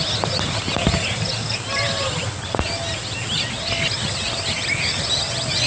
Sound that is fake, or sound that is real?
real